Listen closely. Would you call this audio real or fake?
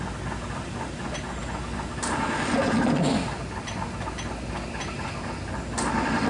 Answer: real